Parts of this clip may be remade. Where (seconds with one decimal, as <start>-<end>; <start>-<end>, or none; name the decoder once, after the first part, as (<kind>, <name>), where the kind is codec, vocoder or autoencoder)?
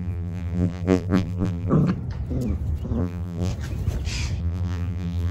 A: 0.0-1.7 (vocoder, BigVGAN v2); 3.0-3.5; 4.4-5.3